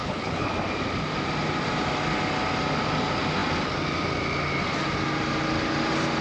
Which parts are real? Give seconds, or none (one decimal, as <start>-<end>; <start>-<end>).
0.5-6.2

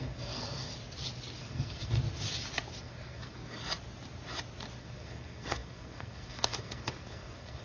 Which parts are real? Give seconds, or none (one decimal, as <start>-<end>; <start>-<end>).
0.7-1.4; 2.0-2.8; 3.6-4.8

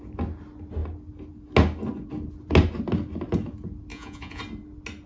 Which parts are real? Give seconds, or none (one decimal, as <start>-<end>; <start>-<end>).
0.0-3.9; 4.4-5.1

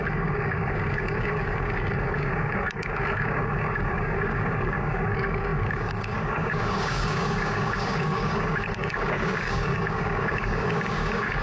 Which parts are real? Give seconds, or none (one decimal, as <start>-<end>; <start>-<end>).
none